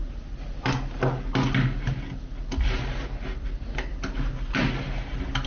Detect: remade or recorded recorded